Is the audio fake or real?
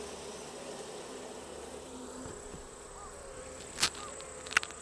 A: real